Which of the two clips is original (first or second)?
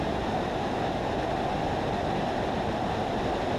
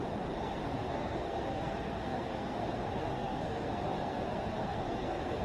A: first